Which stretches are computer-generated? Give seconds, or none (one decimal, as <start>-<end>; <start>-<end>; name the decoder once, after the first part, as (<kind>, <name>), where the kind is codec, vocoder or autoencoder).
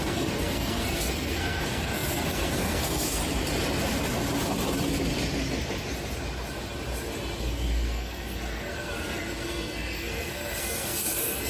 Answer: 0.0-3.2 (codec, SNAC); 7.4-11.5